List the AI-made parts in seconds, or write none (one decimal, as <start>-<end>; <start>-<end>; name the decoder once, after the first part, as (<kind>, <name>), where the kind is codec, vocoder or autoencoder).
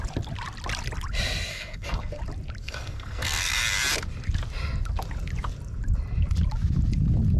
1.5-2.2 (codec, SNAC); 2.6-3.5